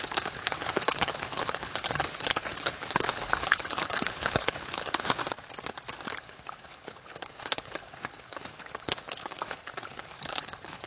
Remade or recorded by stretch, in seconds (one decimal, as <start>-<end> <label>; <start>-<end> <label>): 0.0-5.2 remade; 5.2-6.1 recorded; 6.1-10.9 remade